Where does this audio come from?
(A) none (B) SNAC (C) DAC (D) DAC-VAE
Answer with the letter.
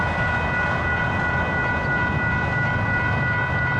A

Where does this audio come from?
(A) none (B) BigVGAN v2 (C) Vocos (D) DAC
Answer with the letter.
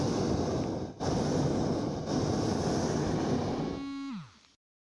A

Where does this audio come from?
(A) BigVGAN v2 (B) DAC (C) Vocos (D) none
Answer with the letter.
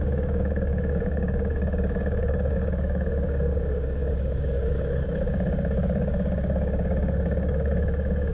B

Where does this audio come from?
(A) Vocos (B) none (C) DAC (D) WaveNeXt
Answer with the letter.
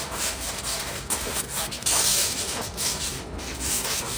C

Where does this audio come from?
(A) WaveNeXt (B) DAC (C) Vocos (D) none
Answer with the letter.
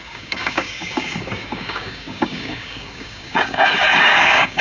B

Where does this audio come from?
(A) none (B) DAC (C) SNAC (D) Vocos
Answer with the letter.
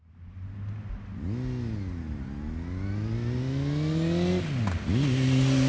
A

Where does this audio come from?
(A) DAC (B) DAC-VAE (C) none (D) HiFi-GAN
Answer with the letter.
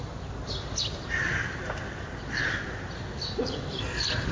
C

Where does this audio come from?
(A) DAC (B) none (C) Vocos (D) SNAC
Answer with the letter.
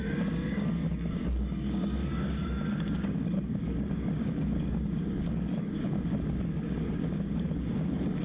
A